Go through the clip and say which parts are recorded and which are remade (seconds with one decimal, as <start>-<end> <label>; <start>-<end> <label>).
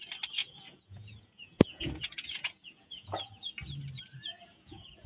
0.0-0.4 recorded; 0.4-3.5 remade; 3.5-4.3 recorded; 4.3-5.1 remade